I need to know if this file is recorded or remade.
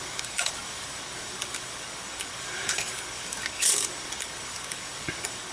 remade